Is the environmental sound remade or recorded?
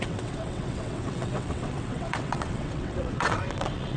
remade